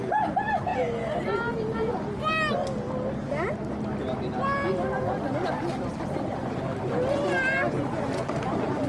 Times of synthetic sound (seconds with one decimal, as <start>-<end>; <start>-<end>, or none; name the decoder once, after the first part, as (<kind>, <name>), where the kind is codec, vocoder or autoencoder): none